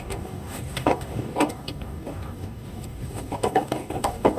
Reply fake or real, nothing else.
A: fake